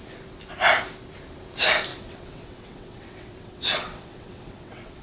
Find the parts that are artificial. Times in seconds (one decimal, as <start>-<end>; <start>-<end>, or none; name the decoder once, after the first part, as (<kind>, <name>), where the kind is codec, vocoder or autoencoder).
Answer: 1.9-5.0 (vocoder, WaveNeXt)